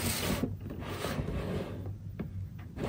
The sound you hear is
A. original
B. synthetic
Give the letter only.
A